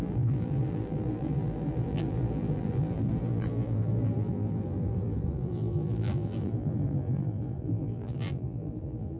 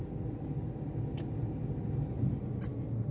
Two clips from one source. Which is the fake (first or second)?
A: first